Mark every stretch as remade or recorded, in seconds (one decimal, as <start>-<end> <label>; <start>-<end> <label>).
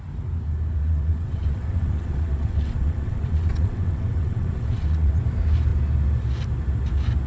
0.0-0.8 recorded; 0.8-5.2 remade; 5.2-7.3 recorded